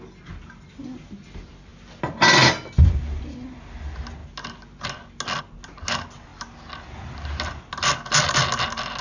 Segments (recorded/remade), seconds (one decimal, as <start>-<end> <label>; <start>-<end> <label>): 0.0-9.0 recorded